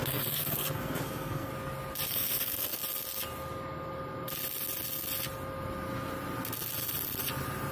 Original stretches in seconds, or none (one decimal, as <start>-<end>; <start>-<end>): 1.5-2.1; 2.8-7.7